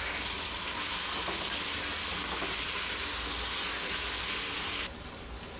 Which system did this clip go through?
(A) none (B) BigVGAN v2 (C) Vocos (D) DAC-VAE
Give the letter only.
A